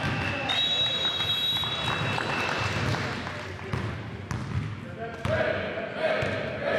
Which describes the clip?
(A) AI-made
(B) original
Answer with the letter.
B